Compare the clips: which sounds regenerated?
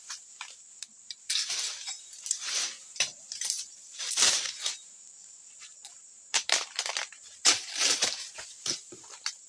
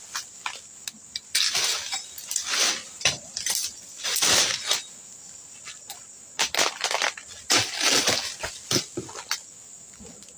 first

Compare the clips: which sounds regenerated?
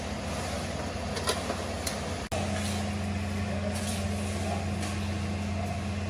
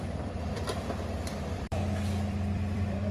second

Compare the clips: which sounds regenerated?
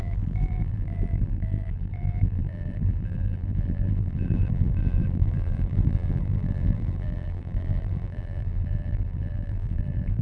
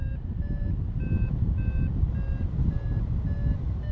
first